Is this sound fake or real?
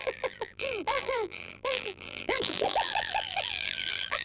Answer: fake